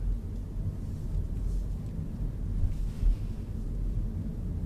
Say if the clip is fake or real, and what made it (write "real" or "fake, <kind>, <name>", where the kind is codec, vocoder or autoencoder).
real